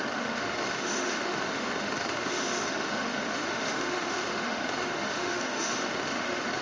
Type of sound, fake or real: fake